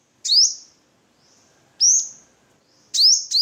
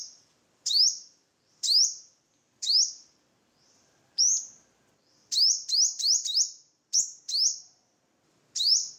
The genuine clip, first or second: first